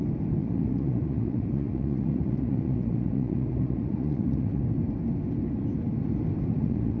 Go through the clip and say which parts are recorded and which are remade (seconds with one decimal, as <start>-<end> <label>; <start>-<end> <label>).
0.0-0.4 recorded; 0.4-4.6 remade; 4.6-6.5 recorded; 6.5-7.0 remade